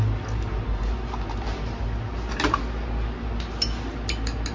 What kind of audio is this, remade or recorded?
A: recorded